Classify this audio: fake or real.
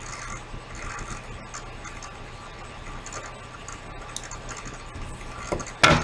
real